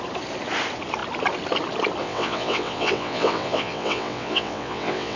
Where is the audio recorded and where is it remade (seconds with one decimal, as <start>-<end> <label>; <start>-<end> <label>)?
0.0-2.0 recorded; 2.0-5.2 remade